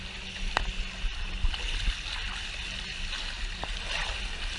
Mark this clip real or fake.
real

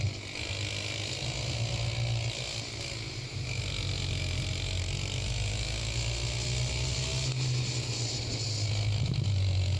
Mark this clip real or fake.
real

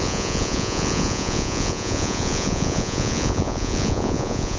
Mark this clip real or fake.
fake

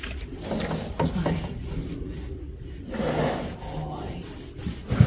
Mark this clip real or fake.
real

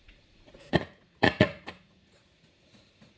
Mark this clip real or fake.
fake